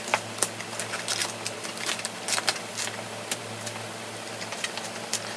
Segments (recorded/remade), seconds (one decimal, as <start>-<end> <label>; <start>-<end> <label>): 0.0-5.4 recorded